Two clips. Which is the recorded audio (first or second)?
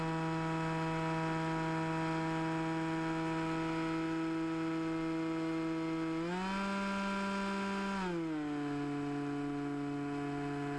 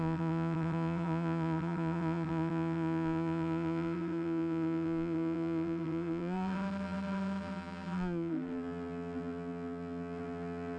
first